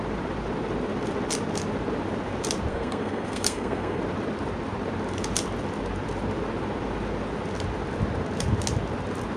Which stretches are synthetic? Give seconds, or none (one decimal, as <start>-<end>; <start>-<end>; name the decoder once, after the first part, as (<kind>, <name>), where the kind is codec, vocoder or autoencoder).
2.7-4.0 (codec, SNAC)